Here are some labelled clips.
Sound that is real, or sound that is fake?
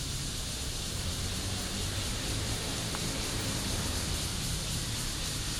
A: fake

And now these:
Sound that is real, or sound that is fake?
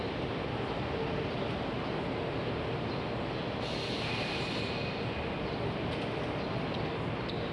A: real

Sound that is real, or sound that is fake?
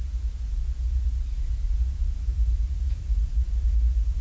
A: fake